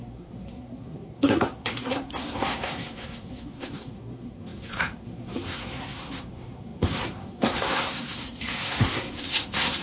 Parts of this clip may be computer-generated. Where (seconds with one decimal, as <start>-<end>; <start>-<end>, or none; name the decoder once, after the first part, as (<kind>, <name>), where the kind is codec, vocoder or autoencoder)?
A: 0.0-9.8 (codec, SNAC)